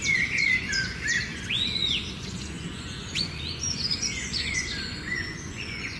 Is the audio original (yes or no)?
no